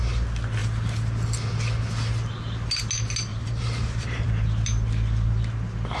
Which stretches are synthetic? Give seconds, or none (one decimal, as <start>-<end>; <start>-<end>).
3.3-4.3